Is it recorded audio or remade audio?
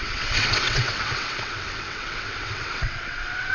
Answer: remade